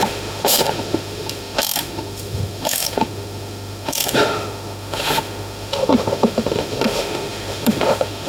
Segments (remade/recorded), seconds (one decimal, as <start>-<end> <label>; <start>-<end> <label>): 0.0-8.3 remade